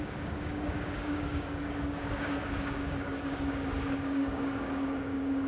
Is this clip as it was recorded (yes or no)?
no